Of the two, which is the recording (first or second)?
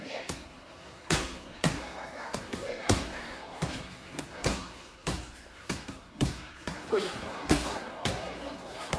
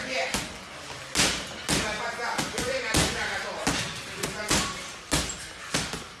second